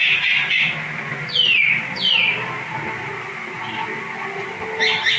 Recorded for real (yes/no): yes